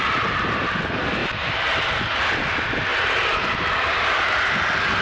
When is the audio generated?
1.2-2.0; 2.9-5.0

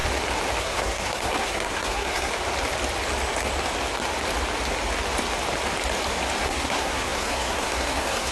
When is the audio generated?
0.6-2.3; 6.4-8.3

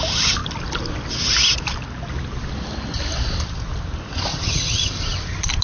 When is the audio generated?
4.3-4.9

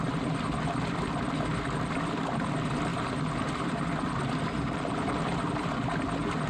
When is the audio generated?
none

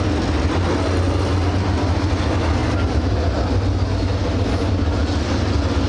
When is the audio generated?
none

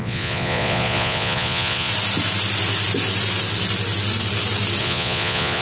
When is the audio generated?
0.0-1.9; 4.8-5.6

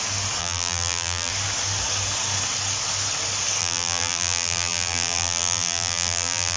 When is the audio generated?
0.4-1.3; 3.6-6.6